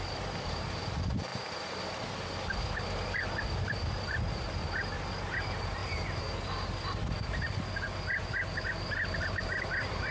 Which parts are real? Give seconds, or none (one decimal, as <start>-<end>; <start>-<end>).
1.3-2.1; 5.8-9.6